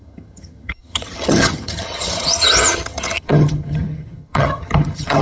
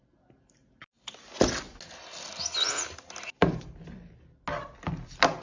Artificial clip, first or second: first